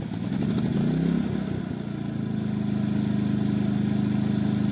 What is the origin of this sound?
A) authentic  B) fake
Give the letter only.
A